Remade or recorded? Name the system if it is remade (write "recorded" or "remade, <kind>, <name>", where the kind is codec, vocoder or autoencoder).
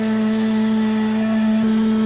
recorded